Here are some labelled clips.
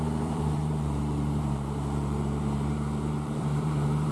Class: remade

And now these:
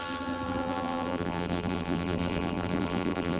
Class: remade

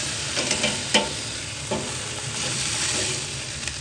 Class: remade